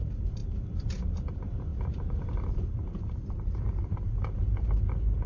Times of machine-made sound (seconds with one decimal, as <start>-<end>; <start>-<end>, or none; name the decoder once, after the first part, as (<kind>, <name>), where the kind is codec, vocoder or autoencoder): 0.0-0.4 (vocoder, BigVGAN v2); 1.0-5.3